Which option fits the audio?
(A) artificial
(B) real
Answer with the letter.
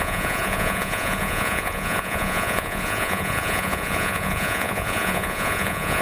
A